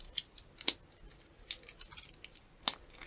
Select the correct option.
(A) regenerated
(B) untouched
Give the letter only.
B